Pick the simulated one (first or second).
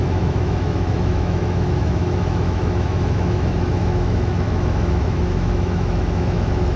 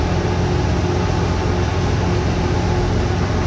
first